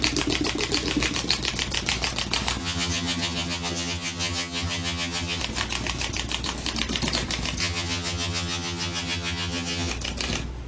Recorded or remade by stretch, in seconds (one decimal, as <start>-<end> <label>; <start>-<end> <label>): 0.0-2.6 recorded; 2.6-5.4 remade; 5.4-7.6 recorded; 7.6-9.9 remade; 9.9-10.7 recorded

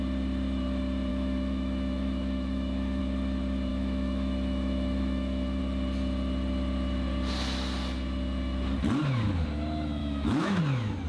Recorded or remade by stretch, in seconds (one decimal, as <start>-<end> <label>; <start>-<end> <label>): 0.0-1.1 recorded; 1.1-3.0 remade; 3.0-3.7 recorded; 3.7-5.6 remade; 5.6-10.0 recorded; 10.0-10.6 remade; 10.6-11.1 recorded

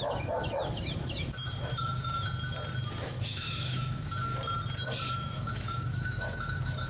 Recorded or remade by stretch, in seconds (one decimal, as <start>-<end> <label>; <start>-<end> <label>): 0.0-2.3 remade; 2.3-3.0 recorded; 3.0-4.3 remade; 4.3-5.1 recorded; 5.1-6.9 remade

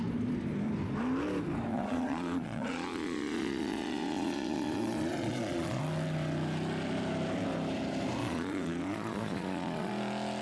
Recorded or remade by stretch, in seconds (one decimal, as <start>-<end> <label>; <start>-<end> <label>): 0.0-1.7 recorded; 1.7-5.8 remade; 5.8-8.2 recorded; 8.2-9.9 remade; 9.9-10.4 recorded

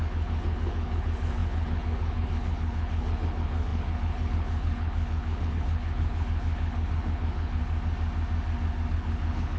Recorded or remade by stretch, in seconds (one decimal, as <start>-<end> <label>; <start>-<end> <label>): 0.0-7.6 remade; 7.6-8.9 recorded; 8.9-9.6 remade